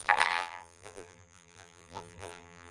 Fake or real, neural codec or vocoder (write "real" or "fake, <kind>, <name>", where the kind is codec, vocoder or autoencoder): fake, vocoder, BigVGAN v2